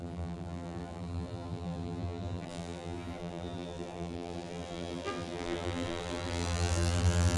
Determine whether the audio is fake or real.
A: fake